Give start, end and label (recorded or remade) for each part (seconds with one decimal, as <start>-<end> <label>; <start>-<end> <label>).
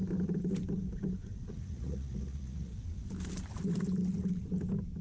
0.0-1.5 recorded; 1.5-2.7 remade; 2.7-5.0 recorded